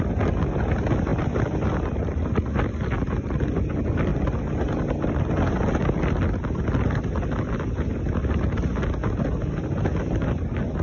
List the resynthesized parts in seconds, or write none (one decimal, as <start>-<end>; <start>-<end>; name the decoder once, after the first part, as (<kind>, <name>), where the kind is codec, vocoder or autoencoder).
1.1-2.5 (vocoder, BigVGAN v2)